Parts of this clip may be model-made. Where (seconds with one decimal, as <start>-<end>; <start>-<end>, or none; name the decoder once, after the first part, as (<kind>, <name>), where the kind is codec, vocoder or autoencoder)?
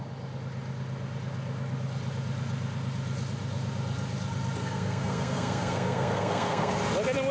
4.6-6.7 (codec, SNAC)